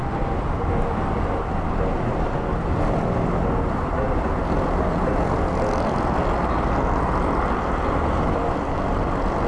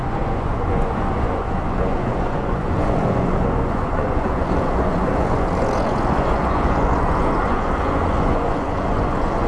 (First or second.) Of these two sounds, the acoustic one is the first